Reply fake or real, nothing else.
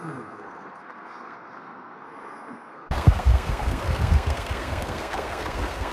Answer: fake